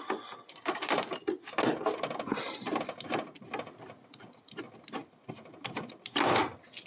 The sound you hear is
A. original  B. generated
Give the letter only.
A